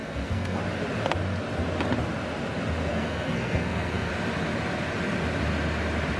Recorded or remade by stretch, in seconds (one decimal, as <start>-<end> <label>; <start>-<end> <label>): 0.0-0.6 remade; 0.6-2.9 recorded; 2.9-4.1 remade; 4.1-6.2 recorded